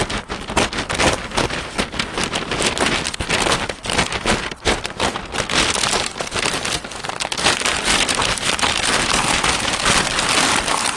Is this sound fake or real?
real